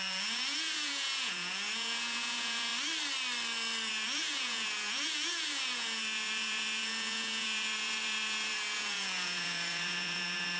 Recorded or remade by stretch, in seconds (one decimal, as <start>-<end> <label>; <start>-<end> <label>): 0.0-2.7 remade; 2.7-3.9 recorded; 3.9-10.6 remade